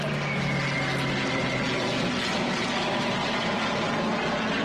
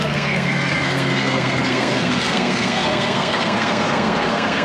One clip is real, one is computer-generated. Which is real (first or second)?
first